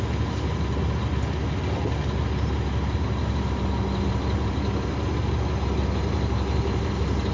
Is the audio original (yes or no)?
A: yes